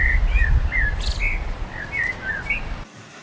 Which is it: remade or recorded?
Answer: recorded